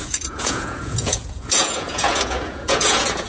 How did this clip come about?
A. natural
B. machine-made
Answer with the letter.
B